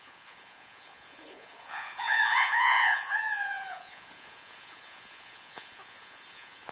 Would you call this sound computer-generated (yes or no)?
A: yes